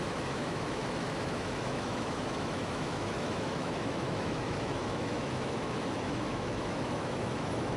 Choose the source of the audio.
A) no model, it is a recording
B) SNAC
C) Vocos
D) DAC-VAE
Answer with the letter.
D